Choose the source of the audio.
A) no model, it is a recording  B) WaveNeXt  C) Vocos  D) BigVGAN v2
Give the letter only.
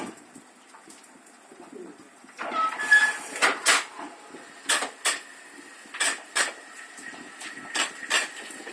A